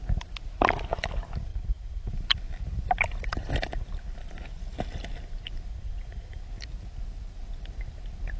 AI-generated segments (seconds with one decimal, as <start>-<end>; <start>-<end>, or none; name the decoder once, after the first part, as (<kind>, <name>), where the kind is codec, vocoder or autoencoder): 1.5-2.1 (vocoder, Vocos); 5.7-6.4